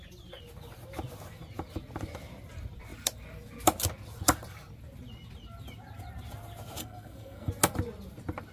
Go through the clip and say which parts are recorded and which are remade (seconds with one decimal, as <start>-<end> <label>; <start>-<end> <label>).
0.0-6.8 recorded; 6.8-7.5 remade; 7.5-8.5 recorded